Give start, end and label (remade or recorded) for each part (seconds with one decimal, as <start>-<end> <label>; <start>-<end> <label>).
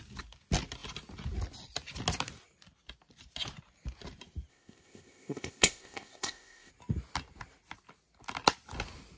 0.0-4.5 recorded; 4.5-6.7 remade; 6.7-9.2 recorded